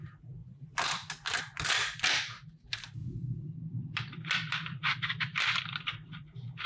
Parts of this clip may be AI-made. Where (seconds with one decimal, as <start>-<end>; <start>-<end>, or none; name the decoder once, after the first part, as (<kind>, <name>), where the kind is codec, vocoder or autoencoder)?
0.4-1.4 (vocoder, BigVGAN v2); 3.0-5.6